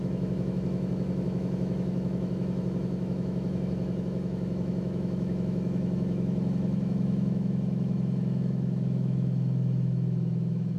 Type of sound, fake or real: fake